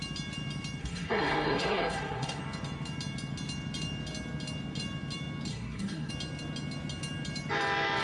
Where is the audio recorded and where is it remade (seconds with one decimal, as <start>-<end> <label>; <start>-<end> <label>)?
0.0-0.8 recorded; 0.8-2.4 remade; 2.4-5.5 recorded; 5.5-6.1 remade; 6.1-8.0 recorded